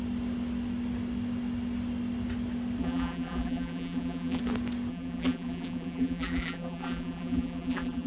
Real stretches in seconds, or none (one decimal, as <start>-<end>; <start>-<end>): 0.0-2.8; 4.4-4.9